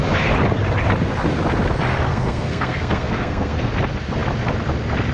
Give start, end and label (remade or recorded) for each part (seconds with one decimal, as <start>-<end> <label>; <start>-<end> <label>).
0.0-2.1 recorded; 2.1-3.7 remade; 3.7-5.1 recorded